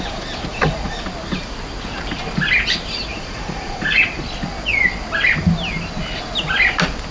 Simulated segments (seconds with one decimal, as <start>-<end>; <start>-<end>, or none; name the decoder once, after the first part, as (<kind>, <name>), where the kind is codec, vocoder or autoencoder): 0.5-1.0 (vocoder, Vocos); 3.1-4.0